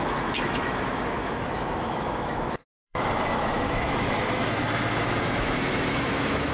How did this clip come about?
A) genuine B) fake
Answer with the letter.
B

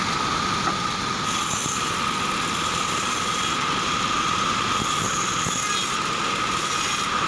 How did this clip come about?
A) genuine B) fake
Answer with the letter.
A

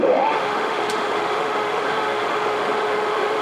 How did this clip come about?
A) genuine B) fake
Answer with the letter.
B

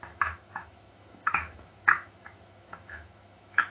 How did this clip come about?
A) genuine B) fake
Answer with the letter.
B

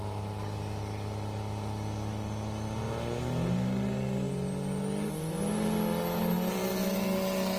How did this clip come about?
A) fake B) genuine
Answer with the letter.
B